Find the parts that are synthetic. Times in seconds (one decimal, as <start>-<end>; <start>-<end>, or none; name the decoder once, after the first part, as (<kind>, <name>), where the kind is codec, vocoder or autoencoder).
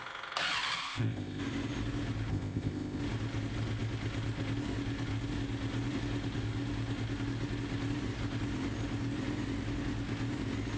0.8-1.4 (codec, ZipCodec); 2.3-3.0